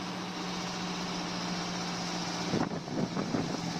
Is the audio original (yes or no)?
yes